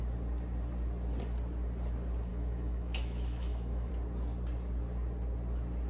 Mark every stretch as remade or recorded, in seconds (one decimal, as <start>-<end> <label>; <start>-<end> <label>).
0.0-2.3 recorded; 2.3-3.9 remade; 3.9-5.9 recorded